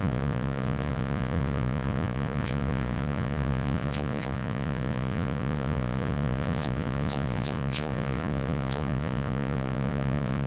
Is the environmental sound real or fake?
fake